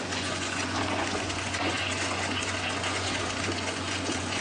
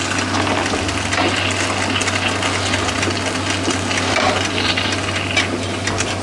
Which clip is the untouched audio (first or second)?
second